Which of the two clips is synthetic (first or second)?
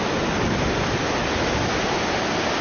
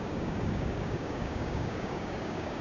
second